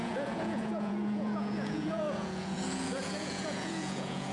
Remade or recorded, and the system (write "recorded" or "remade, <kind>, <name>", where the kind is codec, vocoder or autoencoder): remade, vocoder, Vocos